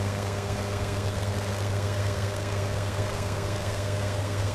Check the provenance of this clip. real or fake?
fake